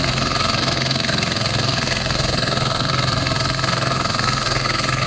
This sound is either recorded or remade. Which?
remade